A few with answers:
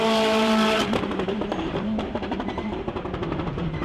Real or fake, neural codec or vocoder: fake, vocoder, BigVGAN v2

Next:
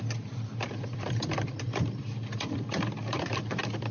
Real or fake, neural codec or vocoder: fake, vocoder, BigVGAN v2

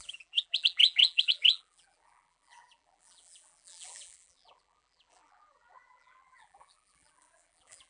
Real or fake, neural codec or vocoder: fake, vocoder, BigVGAN v2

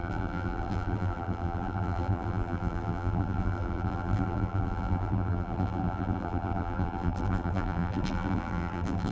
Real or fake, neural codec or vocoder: fake, vocoder, BigVGAN v2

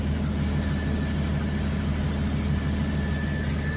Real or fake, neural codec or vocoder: real